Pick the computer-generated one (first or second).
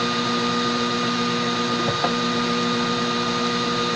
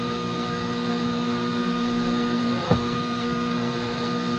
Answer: second